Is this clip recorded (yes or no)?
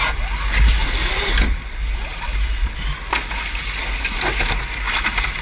yes